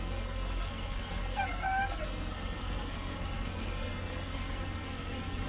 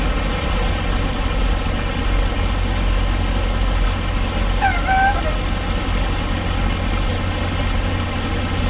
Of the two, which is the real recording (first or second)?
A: second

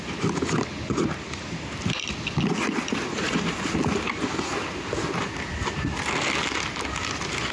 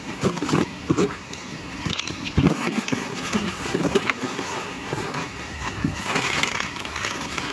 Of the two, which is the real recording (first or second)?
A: first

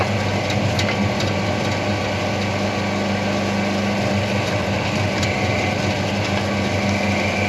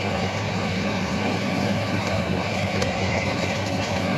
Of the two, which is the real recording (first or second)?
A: first